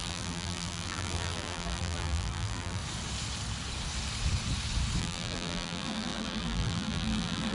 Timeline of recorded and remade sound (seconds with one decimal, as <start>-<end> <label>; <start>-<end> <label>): 0.0-2.8 remade; 2.8-5.0 recorded; 5.0-7.5 remade